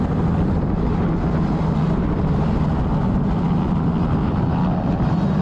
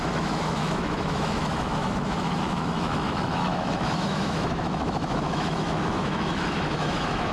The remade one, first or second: second